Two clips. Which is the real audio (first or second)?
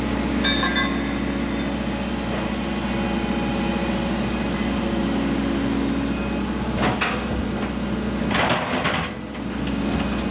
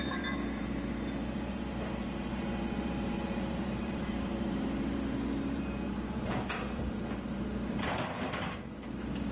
first